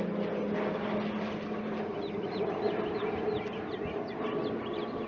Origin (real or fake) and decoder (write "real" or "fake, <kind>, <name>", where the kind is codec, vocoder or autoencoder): real